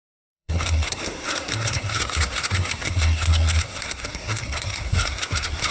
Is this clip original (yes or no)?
no